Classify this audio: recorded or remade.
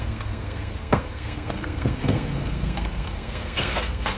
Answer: remade